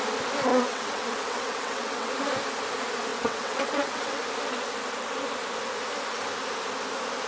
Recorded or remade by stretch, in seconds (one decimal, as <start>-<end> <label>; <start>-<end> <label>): 0.0-0.5 recorded; 0.5-2.1 remade; 2.1-3.1 recorded; 3.1-4.2 remade; 4.2-7.3 recorded